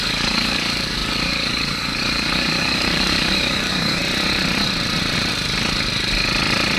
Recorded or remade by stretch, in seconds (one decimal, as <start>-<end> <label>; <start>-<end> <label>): 0.0-4.0 remade; 4.0-6.8 recorded